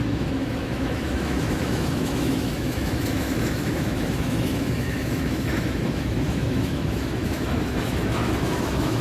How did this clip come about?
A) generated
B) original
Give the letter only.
A